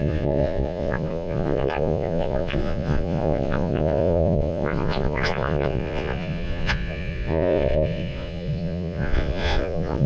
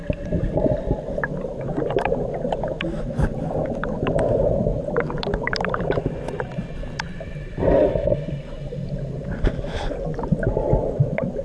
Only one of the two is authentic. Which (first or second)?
second